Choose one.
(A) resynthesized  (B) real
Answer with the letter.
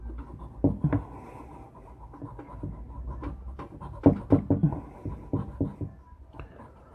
B